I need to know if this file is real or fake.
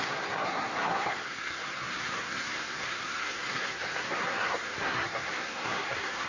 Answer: fake